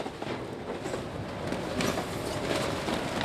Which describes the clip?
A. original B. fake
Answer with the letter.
A